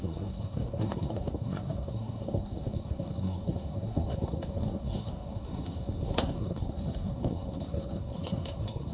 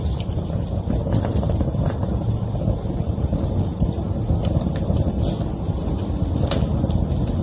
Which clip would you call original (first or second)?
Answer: second